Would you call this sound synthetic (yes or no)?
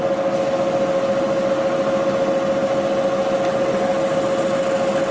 no